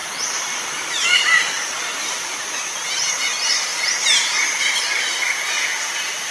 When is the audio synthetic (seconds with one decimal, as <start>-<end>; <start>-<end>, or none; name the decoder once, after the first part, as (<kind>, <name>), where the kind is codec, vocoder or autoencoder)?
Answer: none